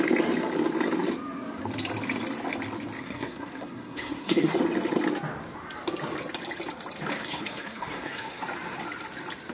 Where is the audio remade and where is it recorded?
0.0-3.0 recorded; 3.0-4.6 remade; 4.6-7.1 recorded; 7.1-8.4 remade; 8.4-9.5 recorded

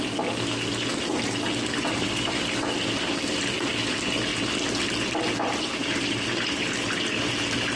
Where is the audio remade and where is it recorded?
0.0-7.8 recorded

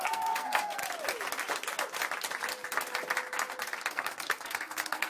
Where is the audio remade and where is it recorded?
0.0-0.8 remade; 0.8-3.9 recorded; 3.9-5.1 remade

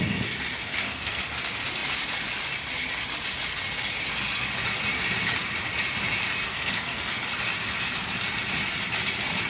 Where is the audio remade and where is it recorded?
0.0-0.5 recorded; 0.5-1.2 remade; 1.2-6.5 recorded; 6.5-7.2 remade; 7.2-9.5 recorded